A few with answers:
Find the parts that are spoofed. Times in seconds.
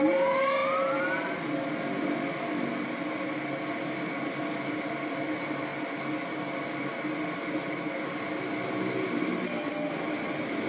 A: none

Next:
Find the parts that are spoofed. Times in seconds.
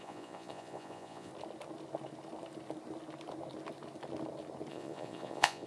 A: 0.0-1.3 (vocoder, Vocos); 4.7-5.7